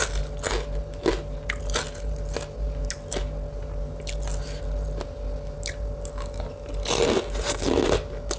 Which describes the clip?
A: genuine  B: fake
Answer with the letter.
A